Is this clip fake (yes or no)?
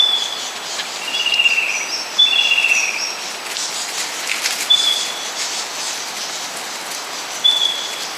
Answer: no